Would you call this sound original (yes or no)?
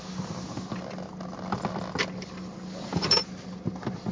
yes